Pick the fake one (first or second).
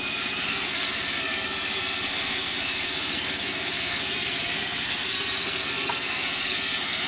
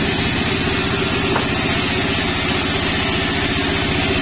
first